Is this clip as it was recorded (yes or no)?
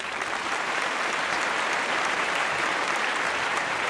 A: no